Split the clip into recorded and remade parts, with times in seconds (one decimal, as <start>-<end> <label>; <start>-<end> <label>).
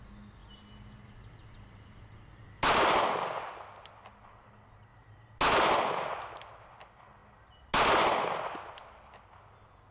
0.0-9.9 recorded